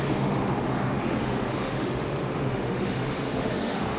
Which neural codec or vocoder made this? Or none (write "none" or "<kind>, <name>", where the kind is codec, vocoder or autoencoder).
autoencoder, DAC-VAE